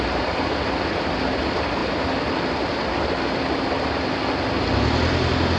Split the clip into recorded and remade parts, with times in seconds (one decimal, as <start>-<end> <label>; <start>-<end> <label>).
0.0-5.6 recorded